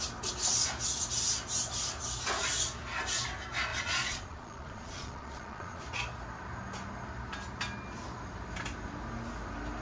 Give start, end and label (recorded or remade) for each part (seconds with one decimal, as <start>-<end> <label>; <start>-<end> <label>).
0.0-3.7 recorded; 3.7-5.8 remade; 5.8-9.8 recorded